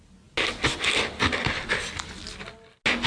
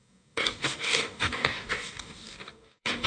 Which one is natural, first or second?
first